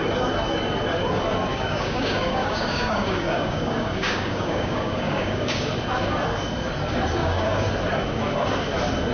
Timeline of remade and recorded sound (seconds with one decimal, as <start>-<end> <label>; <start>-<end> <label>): 0.0-1.5 recorded; 1.5-5.7 remade; 5.7-7.2 recorded; 7.2-7.7 remade; 7.7-9.1 recorded